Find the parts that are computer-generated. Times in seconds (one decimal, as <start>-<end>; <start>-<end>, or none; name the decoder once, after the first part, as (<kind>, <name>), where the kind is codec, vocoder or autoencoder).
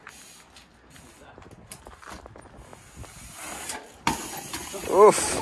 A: none